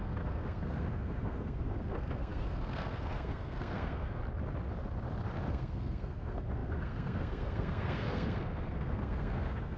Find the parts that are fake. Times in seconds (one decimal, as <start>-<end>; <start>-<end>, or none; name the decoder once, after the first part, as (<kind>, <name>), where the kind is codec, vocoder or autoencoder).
0.0-4.2 (codec, SNAC); 5.5-9.8